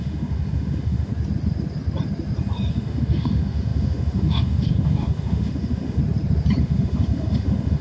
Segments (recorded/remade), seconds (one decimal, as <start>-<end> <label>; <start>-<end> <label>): 0.0-1.1 remade; 1.1-2.7 recorded; 2.7-6.0 remade; 6.0-6.6 recorded; 6.6-7.8 remade